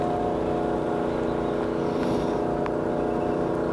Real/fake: real